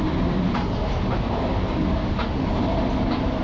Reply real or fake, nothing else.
real